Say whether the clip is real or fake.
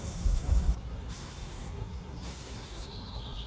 fake